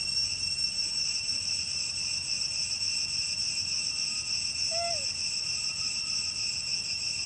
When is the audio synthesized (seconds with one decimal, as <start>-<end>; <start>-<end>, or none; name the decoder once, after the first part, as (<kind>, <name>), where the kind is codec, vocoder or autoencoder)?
none